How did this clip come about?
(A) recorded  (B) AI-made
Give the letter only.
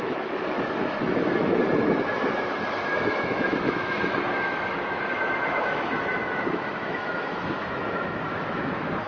B